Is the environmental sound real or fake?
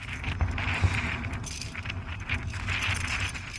real